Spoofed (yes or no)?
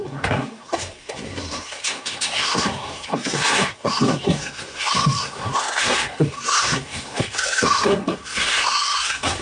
yes